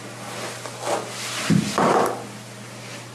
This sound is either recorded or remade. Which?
recorded